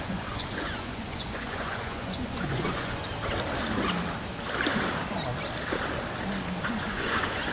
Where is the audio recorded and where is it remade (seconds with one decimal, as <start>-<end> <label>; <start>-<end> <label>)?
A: 0.0-3.0 remade; 3.0-6.6 recorded; 6.6-7.5 remade